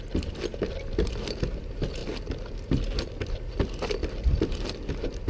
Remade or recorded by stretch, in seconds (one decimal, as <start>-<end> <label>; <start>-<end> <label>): 0.0-5.3 recorded